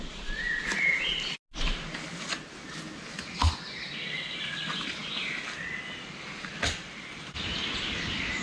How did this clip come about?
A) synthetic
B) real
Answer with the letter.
B